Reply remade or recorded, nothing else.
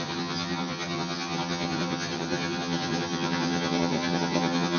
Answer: remade